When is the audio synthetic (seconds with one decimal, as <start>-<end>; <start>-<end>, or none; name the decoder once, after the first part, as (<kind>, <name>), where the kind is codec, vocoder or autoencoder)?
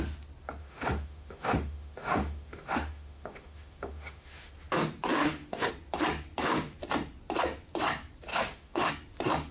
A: 0.6-4.5 (autoencoder, DAC-VAE); 5.2-5.7; 8.3-8.9